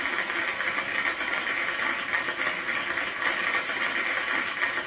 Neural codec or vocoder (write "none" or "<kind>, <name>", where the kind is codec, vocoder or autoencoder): none